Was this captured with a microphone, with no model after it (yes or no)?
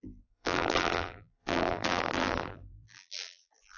no